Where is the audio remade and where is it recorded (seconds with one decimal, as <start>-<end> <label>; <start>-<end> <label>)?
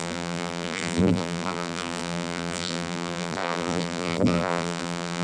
0.0-5.2 remade